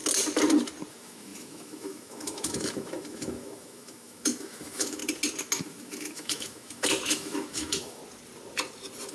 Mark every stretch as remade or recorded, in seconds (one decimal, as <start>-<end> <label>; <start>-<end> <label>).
0.0-0.9 recorded; 0.9-5.0 remade; 5.0-5.6 recorded; 5.6-8.0 remade; 8.0-9.1 recorded